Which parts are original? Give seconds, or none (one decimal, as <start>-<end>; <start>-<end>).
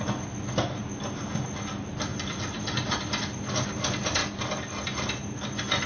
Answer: 0.0-2.1; 3.0-5.9